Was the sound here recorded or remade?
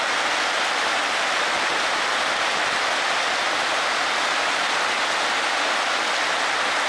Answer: recorded